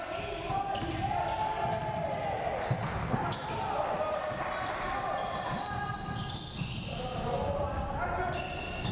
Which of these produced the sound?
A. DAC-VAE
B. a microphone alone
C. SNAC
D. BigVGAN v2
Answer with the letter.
B